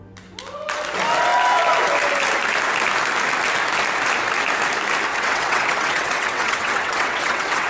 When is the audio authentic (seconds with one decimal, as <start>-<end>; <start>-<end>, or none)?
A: 0.0-5.1